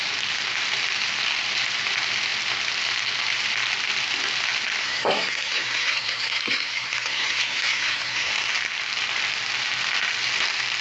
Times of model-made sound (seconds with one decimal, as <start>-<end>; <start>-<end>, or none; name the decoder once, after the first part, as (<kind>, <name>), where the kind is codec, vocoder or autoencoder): 4.8-8.3 (codec, SNAC)